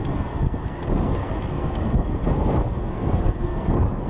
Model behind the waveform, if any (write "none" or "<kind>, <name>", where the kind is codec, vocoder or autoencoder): codec, SNAC